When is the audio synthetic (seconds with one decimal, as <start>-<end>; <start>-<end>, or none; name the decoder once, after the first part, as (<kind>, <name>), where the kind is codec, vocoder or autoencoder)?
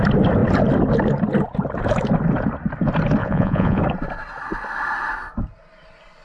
3.2-3.8 (vocoder, Vocos)